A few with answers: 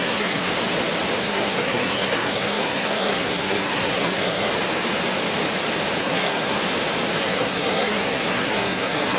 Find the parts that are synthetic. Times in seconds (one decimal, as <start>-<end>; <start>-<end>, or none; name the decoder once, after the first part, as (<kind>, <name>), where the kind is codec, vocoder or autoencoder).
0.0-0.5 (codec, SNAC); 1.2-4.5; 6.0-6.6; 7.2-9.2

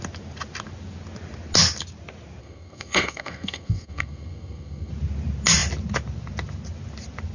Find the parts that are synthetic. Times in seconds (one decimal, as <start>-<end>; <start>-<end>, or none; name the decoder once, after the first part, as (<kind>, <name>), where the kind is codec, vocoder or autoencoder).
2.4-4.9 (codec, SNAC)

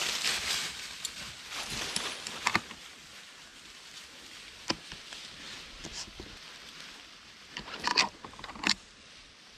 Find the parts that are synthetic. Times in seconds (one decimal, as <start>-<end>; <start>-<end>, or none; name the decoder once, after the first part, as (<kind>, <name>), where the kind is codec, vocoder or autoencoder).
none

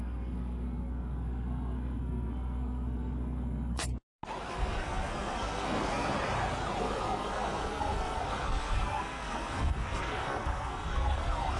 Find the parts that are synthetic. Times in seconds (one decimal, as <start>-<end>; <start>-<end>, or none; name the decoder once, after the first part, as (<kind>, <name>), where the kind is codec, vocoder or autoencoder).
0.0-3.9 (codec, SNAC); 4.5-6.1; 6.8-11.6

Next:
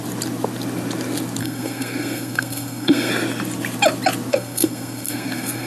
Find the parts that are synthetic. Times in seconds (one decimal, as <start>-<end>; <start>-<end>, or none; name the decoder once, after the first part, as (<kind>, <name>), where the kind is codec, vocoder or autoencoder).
1.4-3.1 (codec, SNAC); 4.3-5.7